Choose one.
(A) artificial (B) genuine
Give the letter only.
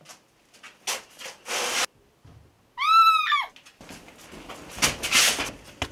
B